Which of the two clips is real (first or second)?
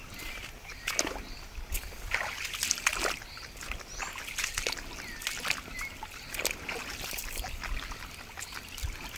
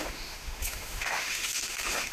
first